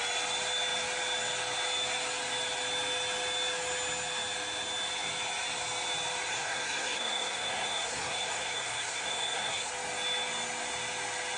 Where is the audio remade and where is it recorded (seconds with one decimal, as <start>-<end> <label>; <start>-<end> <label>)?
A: 0.0-6.3 recorded; 6.3-9.7 remade; 9.7-11.4 recorded